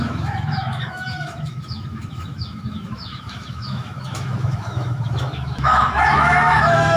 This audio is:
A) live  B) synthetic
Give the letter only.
B